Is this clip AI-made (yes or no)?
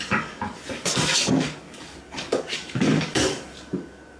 yes